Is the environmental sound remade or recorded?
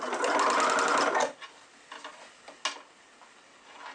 recorded